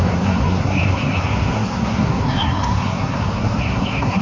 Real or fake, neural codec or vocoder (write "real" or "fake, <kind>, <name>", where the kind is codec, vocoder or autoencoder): fake, codec, SNAC